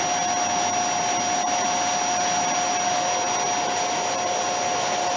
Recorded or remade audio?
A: recorded